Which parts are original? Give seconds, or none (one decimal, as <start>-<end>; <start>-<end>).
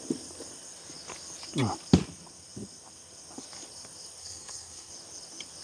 0.0-4.2; 4.9-5.6